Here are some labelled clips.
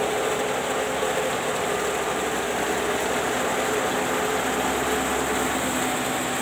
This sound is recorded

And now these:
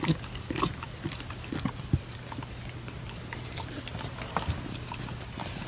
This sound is recorded